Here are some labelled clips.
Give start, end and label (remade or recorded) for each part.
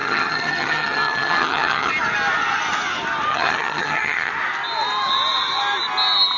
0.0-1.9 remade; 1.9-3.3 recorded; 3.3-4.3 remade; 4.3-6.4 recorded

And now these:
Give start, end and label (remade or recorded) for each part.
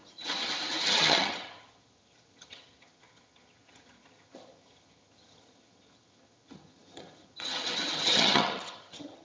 0.0-9.2 remade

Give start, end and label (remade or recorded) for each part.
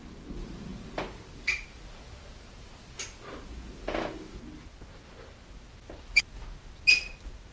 0.0-7.5 recorded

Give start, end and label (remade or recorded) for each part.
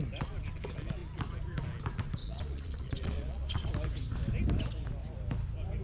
0.0-2.2 recorded; 2.2-3.7 remade; 3.7-5.8 recorded